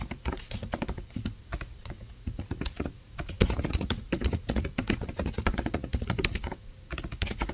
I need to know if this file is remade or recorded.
remade